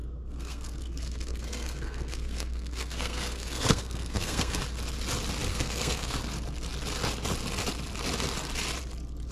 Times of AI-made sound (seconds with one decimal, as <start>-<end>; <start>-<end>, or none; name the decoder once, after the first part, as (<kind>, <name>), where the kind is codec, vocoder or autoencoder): 0.0-4.6 (codec, SNAC); 5.5-6.2